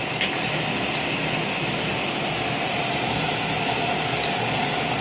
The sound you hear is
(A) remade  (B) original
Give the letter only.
B